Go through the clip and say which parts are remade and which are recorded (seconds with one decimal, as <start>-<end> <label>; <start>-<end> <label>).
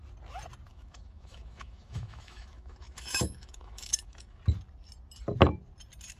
0.0-0.7 recorded; 0.7-4.4 remade; 4.4-6.2 recorded